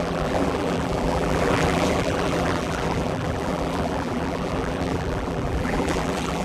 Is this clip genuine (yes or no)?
no